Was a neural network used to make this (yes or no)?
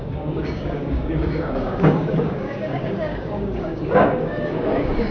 yes